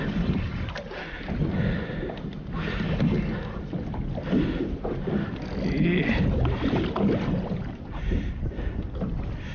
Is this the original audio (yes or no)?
yes